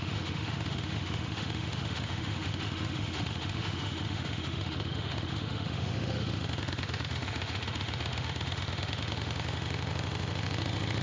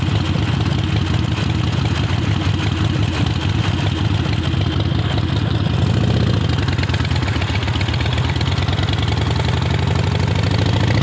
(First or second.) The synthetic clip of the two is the first